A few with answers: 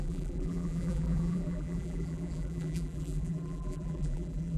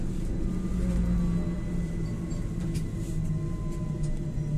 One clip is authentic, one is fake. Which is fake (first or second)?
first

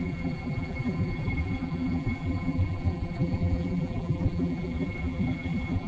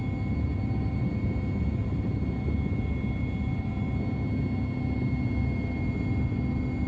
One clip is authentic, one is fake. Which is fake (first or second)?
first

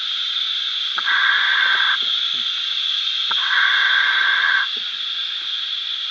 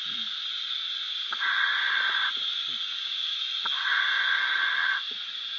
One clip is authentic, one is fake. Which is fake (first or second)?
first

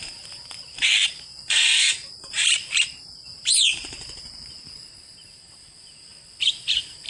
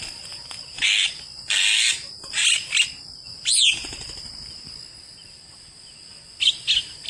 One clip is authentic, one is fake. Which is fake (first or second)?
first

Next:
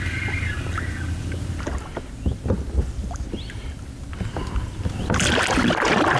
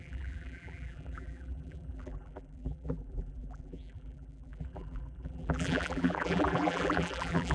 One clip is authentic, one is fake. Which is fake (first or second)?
second